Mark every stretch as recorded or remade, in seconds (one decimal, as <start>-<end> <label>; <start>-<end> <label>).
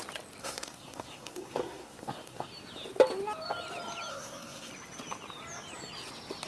0.0-0.4 recorded; 0.4-2.5 remade; 2.5-4.1 recorded; 4.1-4.7 remade; 4.7-6.5 recorded